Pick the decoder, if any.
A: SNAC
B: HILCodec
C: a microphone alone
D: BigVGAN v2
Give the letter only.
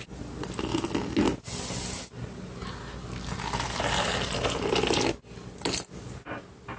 C